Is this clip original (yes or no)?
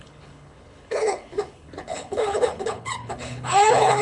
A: no